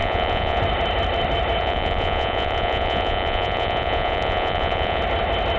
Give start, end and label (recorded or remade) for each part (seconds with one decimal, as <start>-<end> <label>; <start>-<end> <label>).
0.0-0.6 remade; 0.6-1.6 recorded; 1.6-5.0 remade; 5.0-5.6 recorded